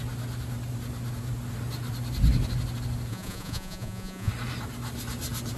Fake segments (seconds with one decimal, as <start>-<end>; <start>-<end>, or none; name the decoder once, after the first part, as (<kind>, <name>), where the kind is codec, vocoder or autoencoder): 3.1-4.3 (vocoder, Vocos)